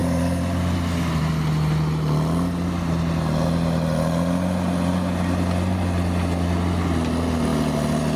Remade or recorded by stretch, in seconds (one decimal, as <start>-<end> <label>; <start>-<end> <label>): 0.0-1.2 remade; 1.2-8.2 recorded